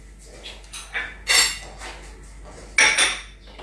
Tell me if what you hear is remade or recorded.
recorded